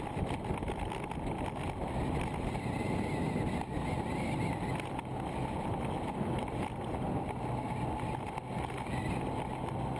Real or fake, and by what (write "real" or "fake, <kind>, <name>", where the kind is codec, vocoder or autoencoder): real